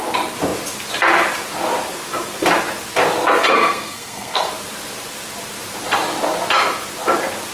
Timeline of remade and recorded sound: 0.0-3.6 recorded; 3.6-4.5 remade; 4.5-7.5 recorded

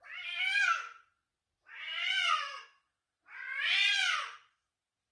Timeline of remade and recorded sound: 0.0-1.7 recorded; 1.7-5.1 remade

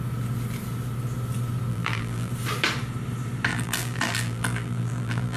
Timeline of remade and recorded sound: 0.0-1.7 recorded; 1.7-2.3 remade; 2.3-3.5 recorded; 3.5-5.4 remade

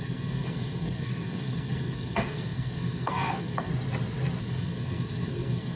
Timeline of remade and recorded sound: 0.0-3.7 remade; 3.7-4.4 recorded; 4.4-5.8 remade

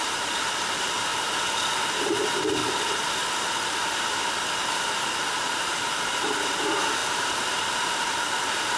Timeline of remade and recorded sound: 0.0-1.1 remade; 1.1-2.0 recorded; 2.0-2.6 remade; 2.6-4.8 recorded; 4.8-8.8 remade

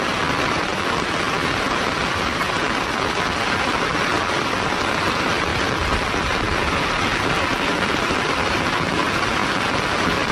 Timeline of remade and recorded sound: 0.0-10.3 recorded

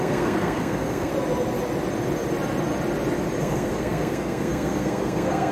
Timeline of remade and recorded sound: 0.0-1.1 remade; 1.1-3.4 recorded; 3.4-5.5 remade

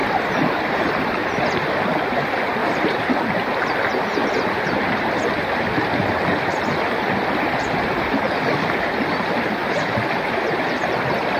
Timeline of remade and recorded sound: 0.0-1.5 remade; 1.5-2.6 recorded; 2.6-3.1 remade; 3.1-3.9 recorded; 3.9-5.1 remade; 5.1-9.6 recorded; 9.6-10.6 remade; 10.6-11.4 recorded